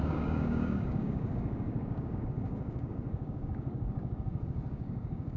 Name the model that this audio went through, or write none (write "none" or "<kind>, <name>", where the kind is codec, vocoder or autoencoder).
codec, DAC